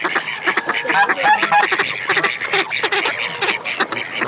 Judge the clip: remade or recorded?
recorded